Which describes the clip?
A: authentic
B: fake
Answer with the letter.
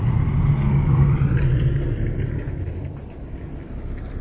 B